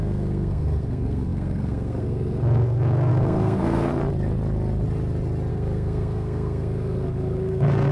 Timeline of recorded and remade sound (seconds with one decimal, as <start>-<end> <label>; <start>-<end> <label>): 0.0-3.9 remade; 3.9-5.5 recorded; 5.5-7.9 remade